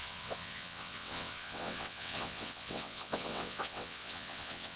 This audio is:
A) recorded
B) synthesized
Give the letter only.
B